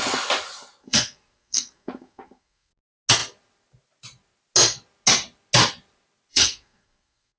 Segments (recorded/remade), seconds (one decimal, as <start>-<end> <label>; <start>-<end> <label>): 0.0-0.8 recorded; 0.8-2.7 remade; 2.7-6.3 recorded; 6.3-7.4 remade